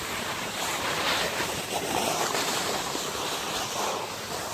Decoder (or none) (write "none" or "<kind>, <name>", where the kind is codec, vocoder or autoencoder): none